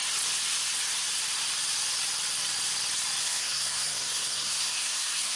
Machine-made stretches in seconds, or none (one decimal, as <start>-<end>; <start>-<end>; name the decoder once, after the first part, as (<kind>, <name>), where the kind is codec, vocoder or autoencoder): 3.2-5.4 (codec, SNAC)